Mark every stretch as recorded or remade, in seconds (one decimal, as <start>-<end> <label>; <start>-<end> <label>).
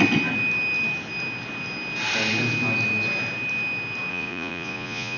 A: 0.0-4.1 recorded; 4.1-5.2 remade